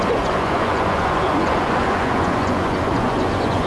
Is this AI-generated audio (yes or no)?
yes